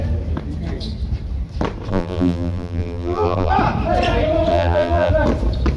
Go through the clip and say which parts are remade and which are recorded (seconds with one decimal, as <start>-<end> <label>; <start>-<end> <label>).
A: 0.0-1.9 recorded; 1.9-3.5 remade; 3.5-4.5 recorded; 4.5-5.1 remade; 5.1-5.8 recorded